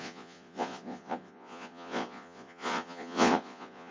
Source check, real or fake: fake